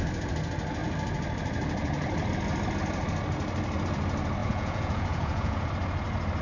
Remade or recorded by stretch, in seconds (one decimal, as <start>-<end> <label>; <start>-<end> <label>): 0.0-4.4 recorded; 4.4-5.7 remade; 5.7-6.4 recorded